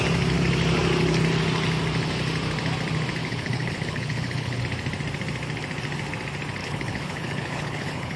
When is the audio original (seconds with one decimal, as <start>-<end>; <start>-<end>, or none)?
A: 0.0-3.2; 4.6-6.6